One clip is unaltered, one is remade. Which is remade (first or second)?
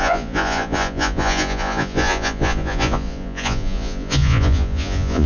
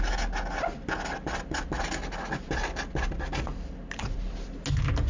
first